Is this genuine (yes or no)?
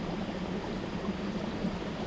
yes